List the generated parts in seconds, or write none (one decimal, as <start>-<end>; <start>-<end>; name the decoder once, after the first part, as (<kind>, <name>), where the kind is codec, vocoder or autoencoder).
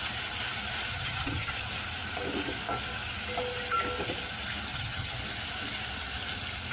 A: 0.9-1.5 (vocoder, HiFi-GAN); 4.7-5.2